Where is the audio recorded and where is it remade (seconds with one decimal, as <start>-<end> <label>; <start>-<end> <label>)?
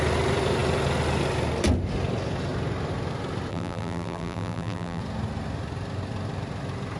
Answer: 0.0-3.5 recorded; 3.5-5.0 remade; 5.0-7.0 recorded